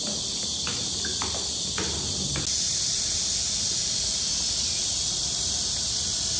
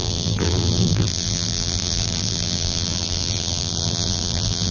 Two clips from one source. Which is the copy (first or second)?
second